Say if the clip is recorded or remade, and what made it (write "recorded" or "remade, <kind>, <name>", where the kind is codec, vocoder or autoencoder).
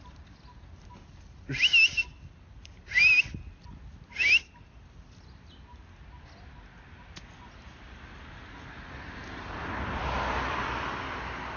recorded